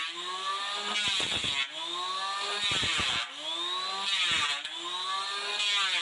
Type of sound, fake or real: real